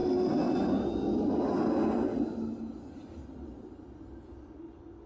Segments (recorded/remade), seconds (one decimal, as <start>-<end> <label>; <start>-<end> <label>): 0.0-5.1 recorded